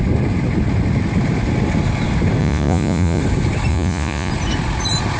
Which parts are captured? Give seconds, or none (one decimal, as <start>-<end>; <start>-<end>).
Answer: 0.0-2.4; 3.2-3.7; 4.3-5.2